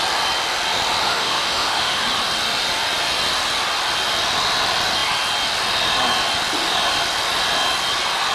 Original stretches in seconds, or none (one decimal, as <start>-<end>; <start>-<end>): 0.0-1.0; 2.0-8.3

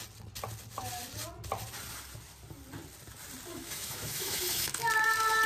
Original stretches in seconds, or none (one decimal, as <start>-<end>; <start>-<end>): 0.0-3.5; 4.9-5.5